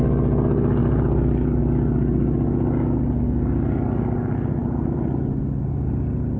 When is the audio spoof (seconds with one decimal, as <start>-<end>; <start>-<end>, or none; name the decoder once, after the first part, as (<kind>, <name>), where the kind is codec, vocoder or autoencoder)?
0.8-1.6 (vocoder, BigVGAN v2); 4.6-5.9